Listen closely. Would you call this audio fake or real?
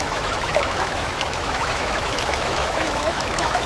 fake